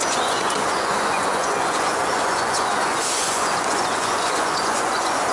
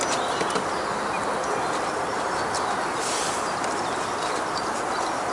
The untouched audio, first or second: second